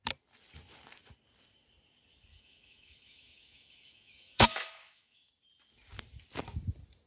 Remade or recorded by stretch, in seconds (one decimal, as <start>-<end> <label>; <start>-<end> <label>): 0.0-2.3 recorded; 2.3-5.3 remade; 5.3-7.1 recorded